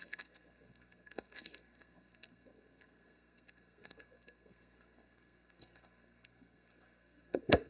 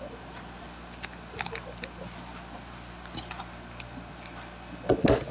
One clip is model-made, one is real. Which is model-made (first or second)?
first